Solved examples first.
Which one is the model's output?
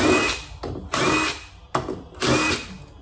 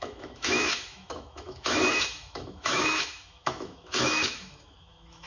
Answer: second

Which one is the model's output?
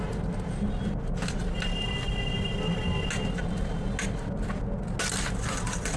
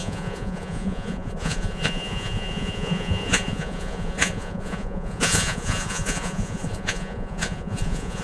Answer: second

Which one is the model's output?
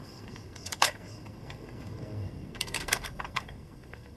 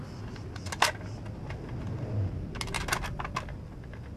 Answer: first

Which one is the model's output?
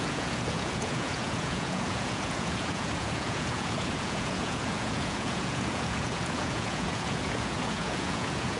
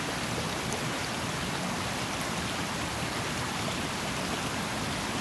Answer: first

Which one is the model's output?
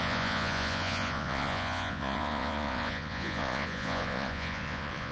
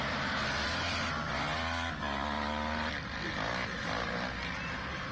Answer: first